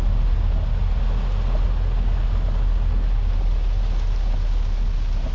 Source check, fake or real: real